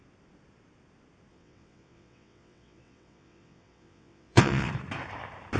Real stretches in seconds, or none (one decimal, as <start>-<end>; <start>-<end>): 0.0-1.3; 4.7-5.6